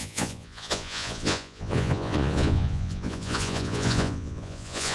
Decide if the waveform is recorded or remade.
remade